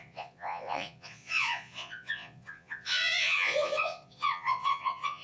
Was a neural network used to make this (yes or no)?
yes